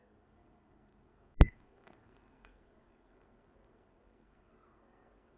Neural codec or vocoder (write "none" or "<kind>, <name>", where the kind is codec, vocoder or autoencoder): codec, SNAC